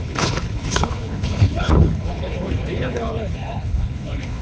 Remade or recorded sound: remade